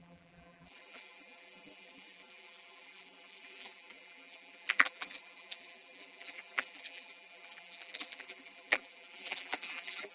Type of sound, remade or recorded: remade